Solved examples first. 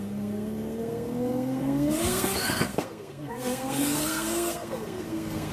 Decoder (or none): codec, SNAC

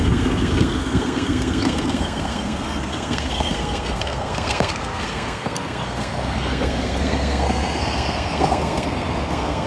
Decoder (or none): codec, SNAC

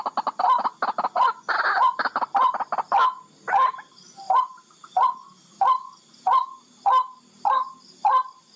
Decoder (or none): none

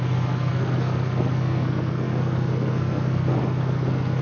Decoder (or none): codec, SNAC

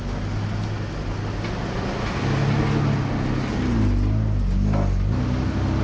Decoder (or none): none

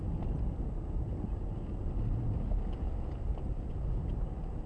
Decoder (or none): none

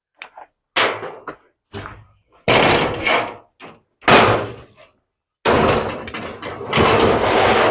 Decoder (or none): none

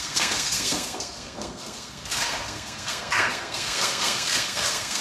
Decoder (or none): codec, SNAC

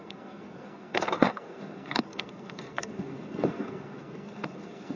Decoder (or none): codec, SNAC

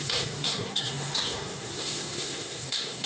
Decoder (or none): codec, SNAC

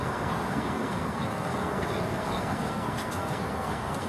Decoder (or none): codec, SNAC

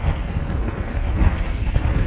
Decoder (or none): codec, SNAC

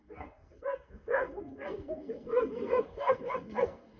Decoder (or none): codec, SNAC